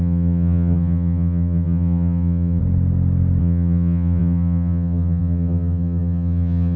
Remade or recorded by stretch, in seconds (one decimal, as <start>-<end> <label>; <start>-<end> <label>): 0.0-2.6 remade; 2.6-3.4 recorded; 3.4-6.8 remade